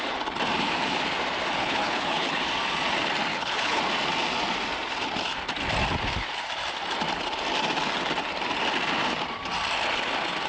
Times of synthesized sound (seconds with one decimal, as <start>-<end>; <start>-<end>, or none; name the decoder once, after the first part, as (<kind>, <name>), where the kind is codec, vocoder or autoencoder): 1.6-2.4 (codec, HILCodec); 3.3-3.8